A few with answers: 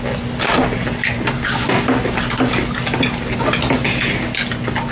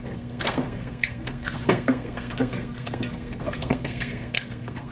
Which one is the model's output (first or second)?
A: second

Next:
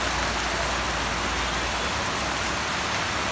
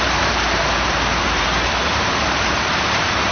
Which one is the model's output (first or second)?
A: second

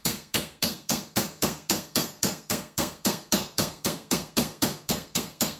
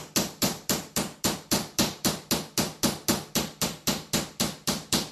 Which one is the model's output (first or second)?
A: first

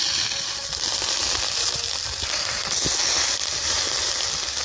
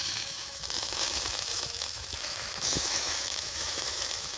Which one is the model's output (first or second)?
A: second